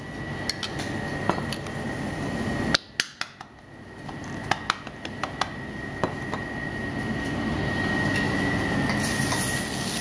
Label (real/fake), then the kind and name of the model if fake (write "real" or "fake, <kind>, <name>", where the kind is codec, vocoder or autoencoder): real